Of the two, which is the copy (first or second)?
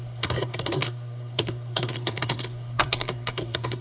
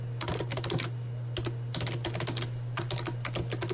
first